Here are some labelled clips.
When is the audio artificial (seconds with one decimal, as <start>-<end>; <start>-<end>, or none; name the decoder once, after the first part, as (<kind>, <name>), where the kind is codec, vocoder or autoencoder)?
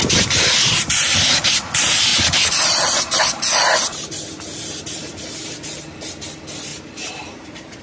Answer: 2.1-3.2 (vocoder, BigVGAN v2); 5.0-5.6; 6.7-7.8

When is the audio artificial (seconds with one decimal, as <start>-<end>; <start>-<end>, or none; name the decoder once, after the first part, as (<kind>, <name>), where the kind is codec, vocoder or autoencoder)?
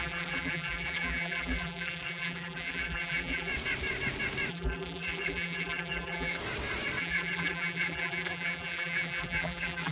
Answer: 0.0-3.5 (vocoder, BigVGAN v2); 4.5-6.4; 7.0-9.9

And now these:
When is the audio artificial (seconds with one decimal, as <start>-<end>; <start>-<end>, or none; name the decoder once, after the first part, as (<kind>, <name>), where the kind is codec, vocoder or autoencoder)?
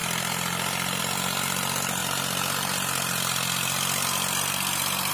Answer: 1.0-2.0 (vocoder, BigVGAN v2)